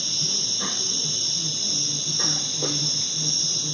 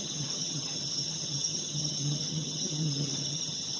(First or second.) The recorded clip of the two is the first